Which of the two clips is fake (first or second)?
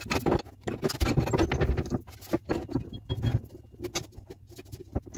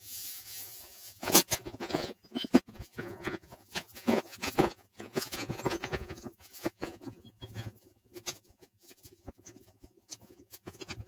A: second